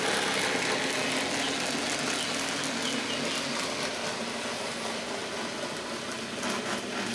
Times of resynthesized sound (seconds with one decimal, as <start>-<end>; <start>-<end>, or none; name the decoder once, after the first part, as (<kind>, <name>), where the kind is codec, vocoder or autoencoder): none